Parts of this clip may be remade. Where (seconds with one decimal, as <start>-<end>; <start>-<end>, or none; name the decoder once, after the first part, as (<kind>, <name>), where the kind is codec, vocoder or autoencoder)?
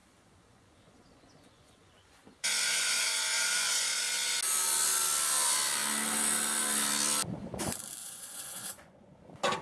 0.0-4.0 (vocoder, Vocos); 8.0-9.2